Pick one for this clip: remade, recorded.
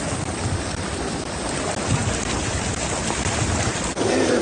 recorded